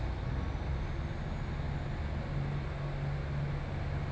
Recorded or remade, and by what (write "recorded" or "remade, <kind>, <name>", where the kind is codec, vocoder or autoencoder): recorded